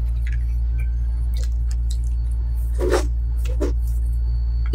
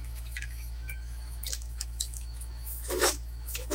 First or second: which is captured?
first